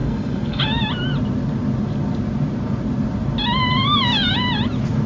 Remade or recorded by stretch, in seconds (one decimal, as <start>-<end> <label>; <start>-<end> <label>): 0.0-0.6 remade; 0.6-5.1 recorded